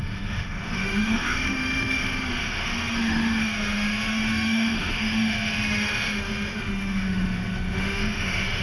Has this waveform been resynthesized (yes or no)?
yes